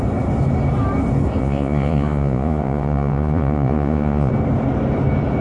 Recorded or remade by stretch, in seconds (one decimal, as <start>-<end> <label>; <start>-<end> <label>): 0.0-1.4 recorded; 1.4-4.3 remade; 4.3-5.4 recorded